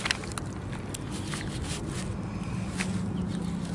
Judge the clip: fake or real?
real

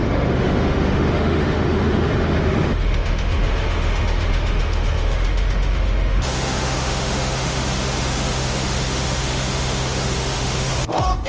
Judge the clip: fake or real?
fake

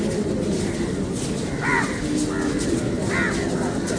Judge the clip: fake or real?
real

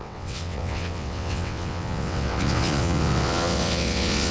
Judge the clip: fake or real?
fake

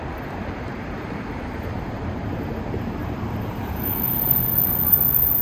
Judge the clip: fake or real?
fake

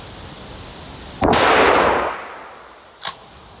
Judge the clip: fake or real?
fake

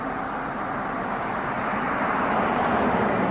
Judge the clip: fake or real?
fake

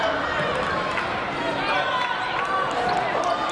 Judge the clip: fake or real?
real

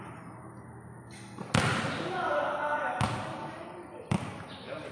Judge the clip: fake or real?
real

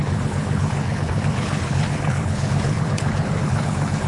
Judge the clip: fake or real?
fake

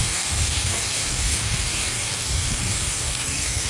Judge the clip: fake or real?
fake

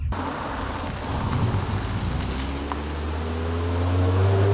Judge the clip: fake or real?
real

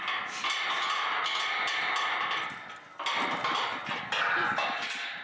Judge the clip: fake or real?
real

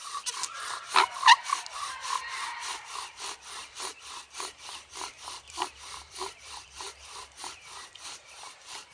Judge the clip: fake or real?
fake